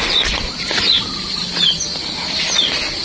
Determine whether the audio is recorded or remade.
recorded